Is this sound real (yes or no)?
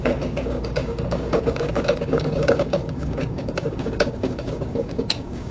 no